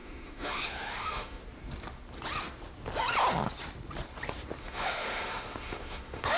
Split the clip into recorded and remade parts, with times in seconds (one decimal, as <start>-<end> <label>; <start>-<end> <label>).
0.0-1.4 remade; 1.4-4.6 recorded; 4.6-6.4 remade